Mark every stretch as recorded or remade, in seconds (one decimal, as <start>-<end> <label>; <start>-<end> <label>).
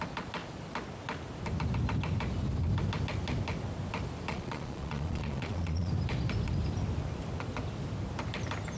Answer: 0.0-4.3 recorded; 4.3-5.9 remade; 5.9-8.8 recorded